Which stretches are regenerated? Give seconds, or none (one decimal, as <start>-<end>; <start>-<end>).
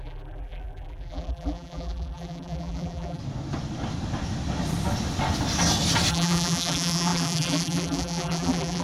0.0-3.2; 6.1-8.8